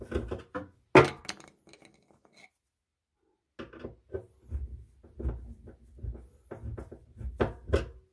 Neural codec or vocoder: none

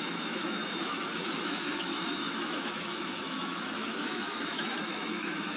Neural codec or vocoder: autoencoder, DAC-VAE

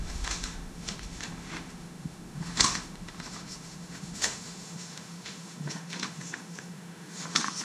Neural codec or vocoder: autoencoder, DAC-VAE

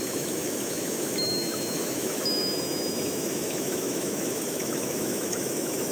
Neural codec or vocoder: autoencoder, DAC-VAE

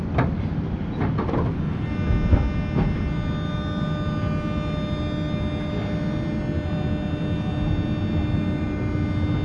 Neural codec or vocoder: none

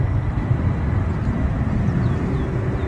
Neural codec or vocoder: none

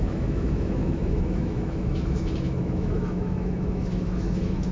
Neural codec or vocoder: autoencoder, DAC-VAE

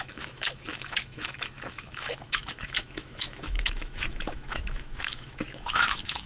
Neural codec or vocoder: autoencoder, DAC-VAE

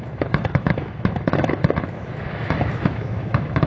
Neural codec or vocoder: autoencoder, DAC-VAE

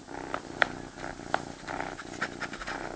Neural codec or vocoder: none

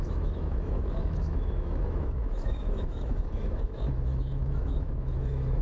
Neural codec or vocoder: autoencoder, DAC-VAE